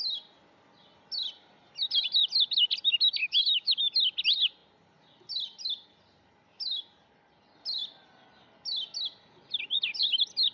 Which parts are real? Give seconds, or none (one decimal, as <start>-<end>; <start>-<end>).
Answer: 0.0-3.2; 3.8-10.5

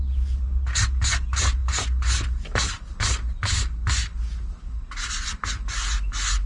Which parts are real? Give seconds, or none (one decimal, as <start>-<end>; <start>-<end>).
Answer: 0.0-6.5

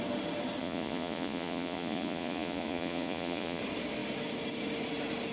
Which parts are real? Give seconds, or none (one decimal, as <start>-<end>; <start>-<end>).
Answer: 0.0-0.6; 3.6-5.3

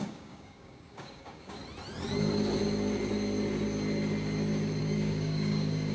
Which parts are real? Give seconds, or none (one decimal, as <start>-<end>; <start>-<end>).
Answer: 1.6-4.8

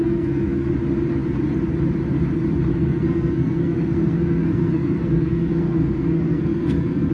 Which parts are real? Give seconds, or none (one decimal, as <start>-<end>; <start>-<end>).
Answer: 0.7-2.7